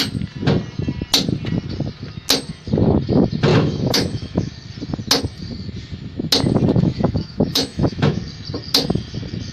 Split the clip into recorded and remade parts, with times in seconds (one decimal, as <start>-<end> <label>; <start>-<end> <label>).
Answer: 0.0-3.5 recorded; 3.5-4.5 remade; 4.5-6.8 recorded; 6.8-8.2 remade; 8.2-9.5 recorded